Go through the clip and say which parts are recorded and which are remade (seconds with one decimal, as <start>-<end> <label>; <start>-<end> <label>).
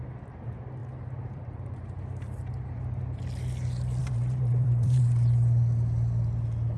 0.0-0.8 recorded; 0.8-3.2 remade; 3.2-4.0 recorded; 4.0-5.0 remade; 5.0-6.8 recorded